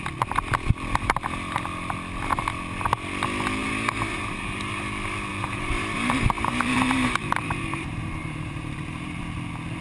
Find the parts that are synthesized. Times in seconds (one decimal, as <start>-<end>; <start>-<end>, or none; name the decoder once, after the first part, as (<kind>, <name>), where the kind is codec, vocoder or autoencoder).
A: 3.6-4.8 (vocoder, BigVGAN v2); 5.3-9.2